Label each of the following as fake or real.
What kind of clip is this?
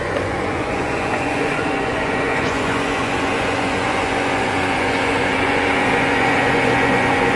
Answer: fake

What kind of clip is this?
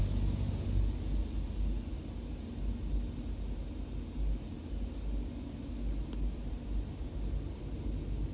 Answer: real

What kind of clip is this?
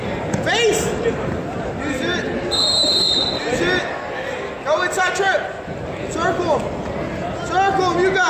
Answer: real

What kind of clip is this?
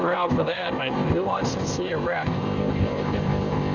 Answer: fake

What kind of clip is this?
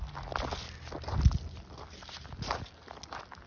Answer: real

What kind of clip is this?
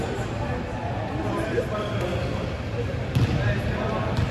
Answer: real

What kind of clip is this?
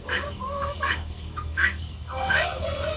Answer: fake